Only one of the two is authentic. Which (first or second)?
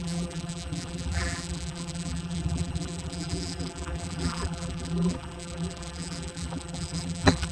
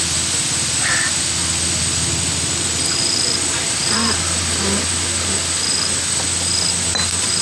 second